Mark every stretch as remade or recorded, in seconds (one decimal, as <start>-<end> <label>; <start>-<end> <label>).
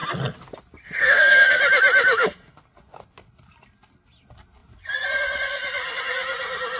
0.0-1.0 recorded; 1.0-1.6 remade; 1.6-6.8 recorded